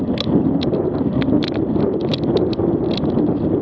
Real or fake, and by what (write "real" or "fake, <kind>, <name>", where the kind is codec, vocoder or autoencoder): real